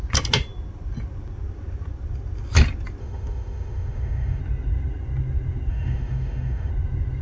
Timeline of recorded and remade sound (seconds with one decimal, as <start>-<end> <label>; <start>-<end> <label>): 0.0-3.0 recorded; 3.0-4.4 remade; 4.4-5.7 recorded; 5.7-6.7 remade; 6.7-7.2 recorded